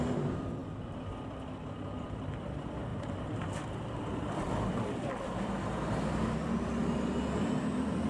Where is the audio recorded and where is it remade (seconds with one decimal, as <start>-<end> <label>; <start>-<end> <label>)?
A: 0.0-0.6 remade; 0.6-1.4 recorded; 1.4-2.9 remade; 2.9-3.7 recorded; 3.7-8.1 remade